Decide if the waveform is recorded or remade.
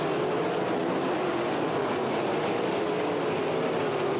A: recorded